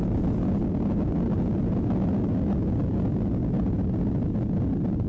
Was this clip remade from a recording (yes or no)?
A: no